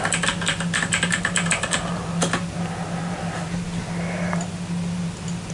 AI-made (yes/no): no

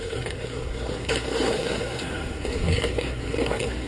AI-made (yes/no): yes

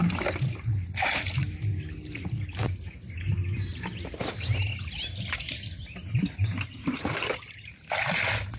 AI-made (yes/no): no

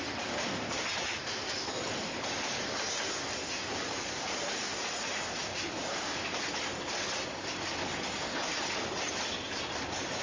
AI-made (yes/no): no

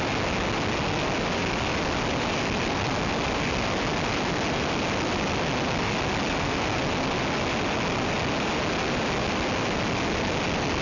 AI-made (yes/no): no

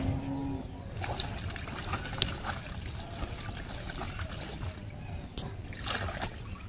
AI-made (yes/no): no